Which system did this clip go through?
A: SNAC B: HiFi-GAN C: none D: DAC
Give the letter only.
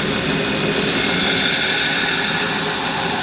C